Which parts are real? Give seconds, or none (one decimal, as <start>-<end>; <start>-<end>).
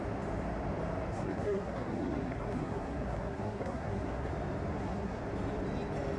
0.0-1.1; 4.3-4.7; 5.2-6.2